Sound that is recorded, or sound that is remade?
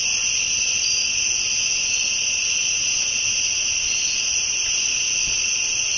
recorded